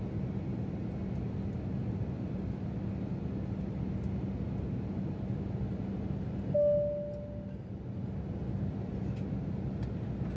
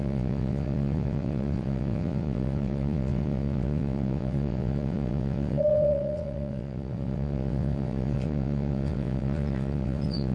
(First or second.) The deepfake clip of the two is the second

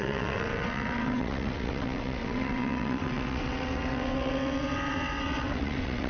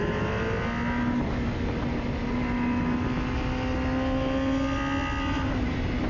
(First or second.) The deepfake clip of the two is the first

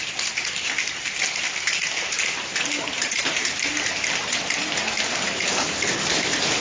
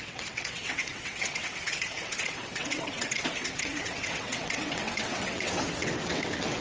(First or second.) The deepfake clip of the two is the second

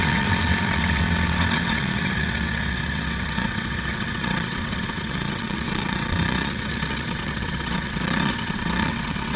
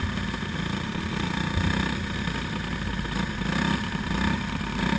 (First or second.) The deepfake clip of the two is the first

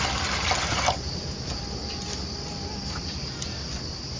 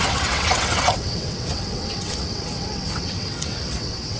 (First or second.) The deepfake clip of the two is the second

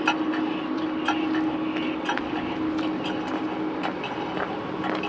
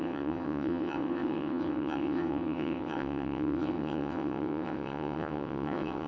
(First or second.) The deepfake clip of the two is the second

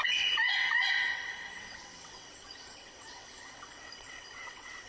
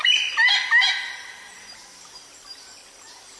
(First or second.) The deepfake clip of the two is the first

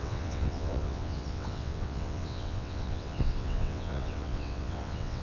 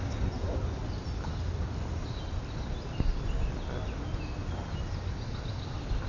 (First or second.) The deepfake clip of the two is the first